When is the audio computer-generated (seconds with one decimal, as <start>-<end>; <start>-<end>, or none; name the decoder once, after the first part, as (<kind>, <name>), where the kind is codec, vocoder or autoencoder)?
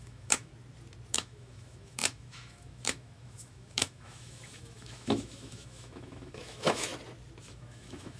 0.0-0.5 (autoencoder, DAC-VAE); 1.1-6.9; 7.5-8.2